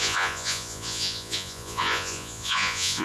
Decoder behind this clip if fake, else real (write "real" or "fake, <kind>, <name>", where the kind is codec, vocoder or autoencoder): fake, vocoder, Vocos